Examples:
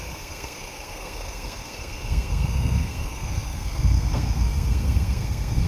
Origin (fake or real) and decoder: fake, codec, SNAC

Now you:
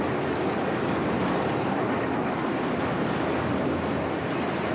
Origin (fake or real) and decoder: real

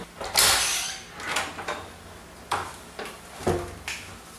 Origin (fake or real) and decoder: real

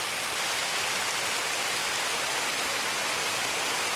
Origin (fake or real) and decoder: real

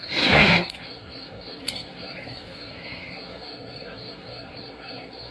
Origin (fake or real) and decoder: fake, codec, SNAC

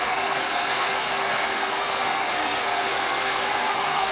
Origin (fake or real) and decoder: fake, codec, SNAC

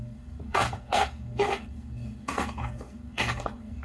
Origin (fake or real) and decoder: fake, codec, SNAC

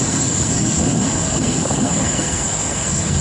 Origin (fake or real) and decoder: fake, codec, SNAC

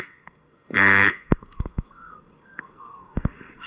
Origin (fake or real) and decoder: fake, codec, SNAC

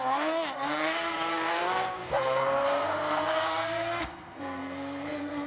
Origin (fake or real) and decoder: fake, codec, SNAC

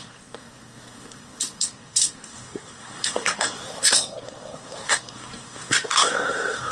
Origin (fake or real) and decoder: fake, codec, SNAC